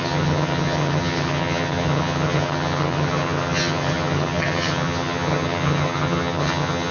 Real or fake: fake